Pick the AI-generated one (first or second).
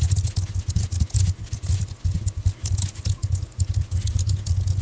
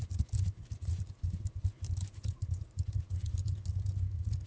second